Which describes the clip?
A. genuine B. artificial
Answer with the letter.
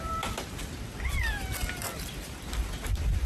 A